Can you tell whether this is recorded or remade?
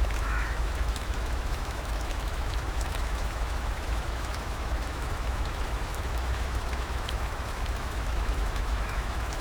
remade